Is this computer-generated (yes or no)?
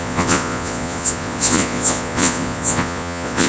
yes